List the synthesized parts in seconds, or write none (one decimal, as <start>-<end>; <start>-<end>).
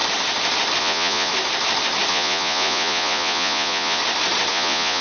0.8-1.3; 2.1-4.0; 4.5-5.0